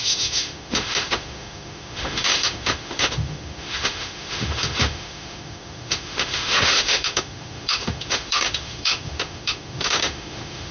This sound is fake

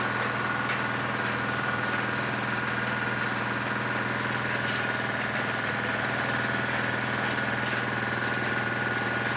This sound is real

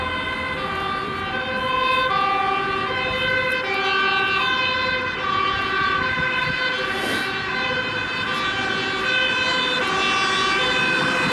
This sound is real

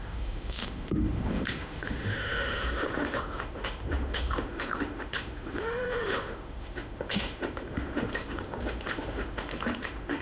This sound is fake